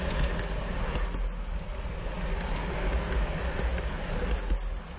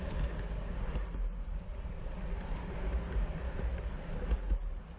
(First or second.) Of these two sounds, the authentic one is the first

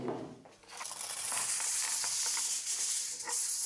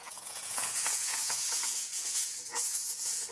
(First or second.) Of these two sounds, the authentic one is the first